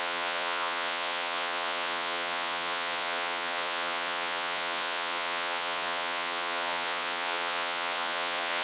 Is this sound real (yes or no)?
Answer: no